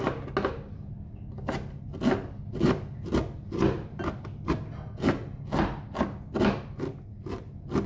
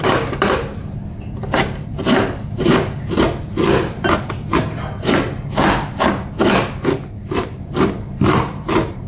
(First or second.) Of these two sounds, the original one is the first